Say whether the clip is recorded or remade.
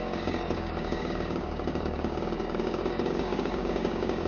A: remade